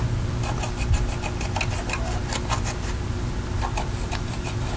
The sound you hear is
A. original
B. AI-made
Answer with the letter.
A